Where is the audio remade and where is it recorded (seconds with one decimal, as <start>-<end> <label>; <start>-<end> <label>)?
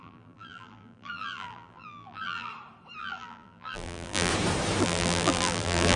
0.0-2.5 remade; 2.5-3.0 recorded; 3.0-4.3 remade; 4.3-4.8 recorded; 4.8-6.0 remade